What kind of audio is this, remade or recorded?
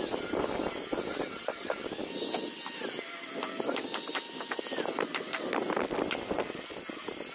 recorded